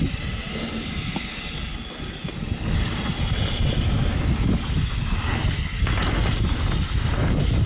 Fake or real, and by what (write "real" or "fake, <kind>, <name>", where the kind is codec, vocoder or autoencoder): real